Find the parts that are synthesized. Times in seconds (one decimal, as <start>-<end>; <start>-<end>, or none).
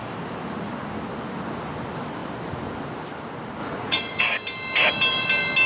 3.6-4.2